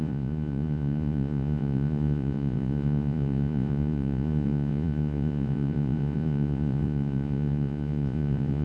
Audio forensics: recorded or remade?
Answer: remade